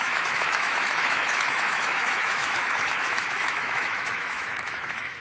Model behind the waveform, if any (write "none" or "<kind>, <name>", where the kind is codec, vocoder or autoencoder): autoencoder, DAC-VAE